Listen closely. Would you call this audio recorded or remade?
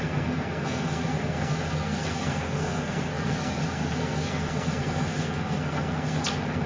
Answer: remade